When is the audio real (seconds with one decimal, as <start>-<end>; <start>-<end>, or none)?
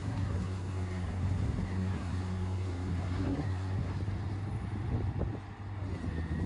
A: 3.9-6.5